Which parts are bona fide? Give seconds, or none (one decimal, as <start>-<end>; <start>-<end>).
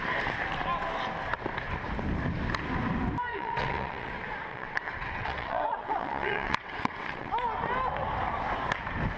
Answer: 0.0-3.3; 4.1-4.5; 7.3-9.2